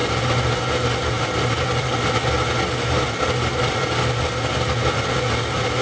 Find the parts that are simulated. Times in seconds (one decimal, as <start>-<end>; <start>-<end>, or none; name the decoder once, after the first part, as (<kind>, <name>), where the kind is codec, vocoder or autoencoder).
none